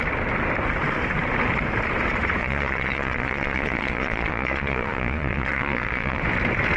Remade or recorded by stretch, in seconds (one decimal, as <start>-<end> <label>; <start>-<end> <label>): 0.0-2.4 recorded; 2.4-6.2 remade; 6.2-6.8 recorded